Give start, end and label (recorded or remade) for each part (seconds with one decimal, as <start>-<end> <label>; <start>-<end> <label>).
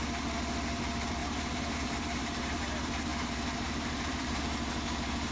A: 0.0-1.2 recorded; 1.2-2.7 remade; 2.7-3.1 recorded; 3.1-4.4 remade; 4.4-5.3 recorded